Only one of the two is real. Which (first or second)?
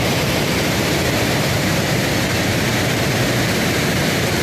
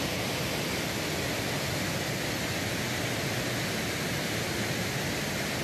second